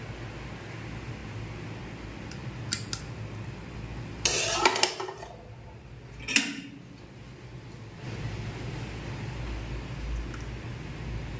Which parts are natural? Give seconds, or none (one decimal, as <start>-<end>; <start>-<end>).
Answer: 0.0-11.4